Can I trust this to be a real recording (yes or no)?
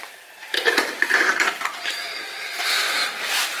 no